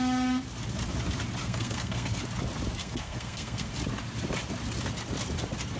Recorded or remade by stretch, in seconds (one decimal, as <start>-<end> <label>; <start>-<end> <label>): 0.0-1.4 recorded; 1.4-2.2 remade; 2.2-2.8 recorded; 2.8-3.7 remade; 3.7-5.8 recorded